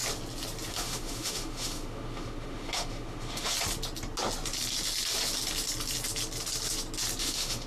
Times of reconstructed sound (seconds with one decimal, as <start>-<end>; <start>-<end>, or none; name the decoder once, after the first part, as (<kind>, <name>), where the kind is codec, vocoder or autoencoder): 0.7-3.5 (autoencoder, DAC-VAE); 7.2-7.7